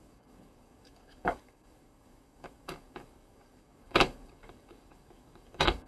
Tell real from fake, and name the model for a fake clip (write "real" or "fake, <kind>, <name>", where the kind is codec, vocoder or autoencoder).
fake, codec, DAC